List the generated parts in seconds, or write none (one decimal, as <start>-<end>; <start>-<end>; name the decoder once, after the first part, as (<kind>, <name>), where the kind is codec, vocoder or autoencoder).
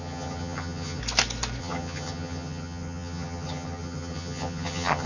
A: 0.0-1.0 (vocoder, HiFi-GAN); 1.6-5.1